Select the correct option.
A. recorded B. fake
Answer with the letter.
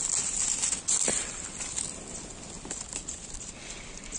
A